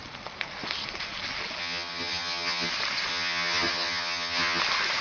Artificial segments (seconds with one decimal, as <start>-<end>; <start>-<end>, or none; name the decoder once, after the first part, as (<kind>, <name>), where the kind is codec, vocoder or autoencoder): 1.6-2.7 (vocoder, HiFi-GAN); 3.1-4.6